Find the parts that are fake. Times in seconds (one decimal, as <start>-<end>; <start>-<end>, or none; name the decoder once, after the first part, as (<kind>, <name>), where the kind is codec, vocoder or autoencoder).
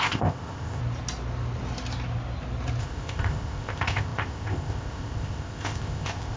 0.0-0.8 (codec, ZipCodec); 2.8-6.4